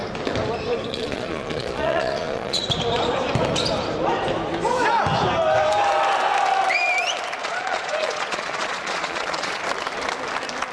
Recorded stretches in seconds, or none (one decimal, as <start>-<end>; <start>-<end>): 0.0-0.9; 2.6-7.4; 9.6-10.7